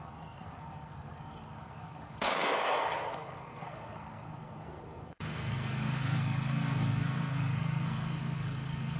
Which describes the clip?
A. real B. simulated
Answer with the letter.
B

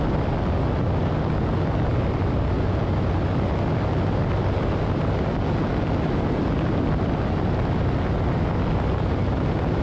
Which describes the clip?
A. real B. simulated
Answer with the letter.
A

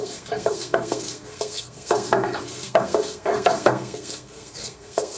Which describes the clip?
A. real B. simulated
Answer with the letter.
B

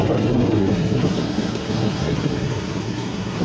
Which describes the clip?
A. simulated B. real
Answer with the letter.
A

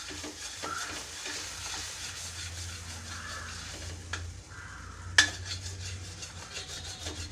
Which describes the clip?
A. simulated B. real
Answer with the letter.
B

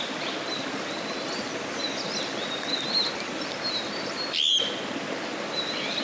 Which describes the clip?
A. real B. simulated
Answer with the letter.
A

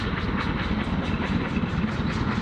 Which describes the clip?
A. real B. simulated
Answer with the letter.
A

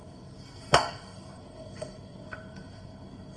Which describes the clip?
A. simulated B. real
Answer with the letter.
A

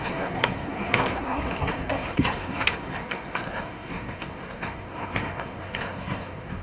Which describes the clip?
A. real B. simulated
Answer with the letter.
B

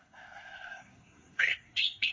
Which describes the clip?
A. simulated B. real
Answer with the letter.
A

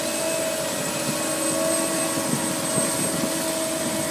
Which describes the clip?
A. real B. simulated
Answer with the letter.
A